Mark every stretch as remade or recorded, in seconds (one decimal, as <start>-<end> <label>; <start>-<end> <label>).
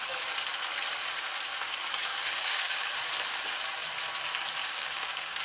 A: 0.0-2.1 recorded; 2.1-2.9 remade; 2.9-4.6 recorded; 4.6-5.4 remade